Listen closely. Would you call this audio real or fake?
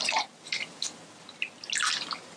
real